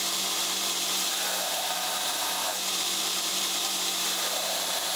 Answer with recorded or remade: remade